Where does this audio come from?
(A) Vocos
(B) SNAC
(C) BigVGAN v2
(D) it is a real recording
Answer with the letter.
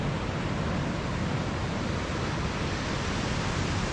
D